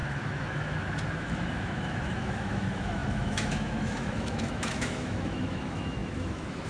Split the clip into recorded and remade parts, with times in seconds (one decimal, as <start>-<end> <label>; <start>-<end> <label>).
0.0-6.7 remade